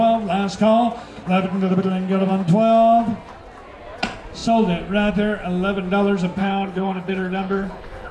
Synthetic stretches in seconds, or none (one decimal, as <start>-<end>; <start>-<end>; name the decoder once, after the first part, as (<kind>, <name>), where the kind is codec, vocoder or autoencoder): 6.4-8.1 (codec, HILCodec)